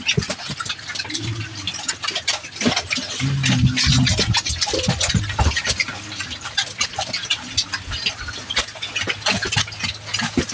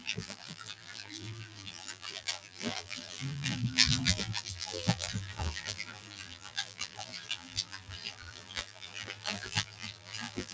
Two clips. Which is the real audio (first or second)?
first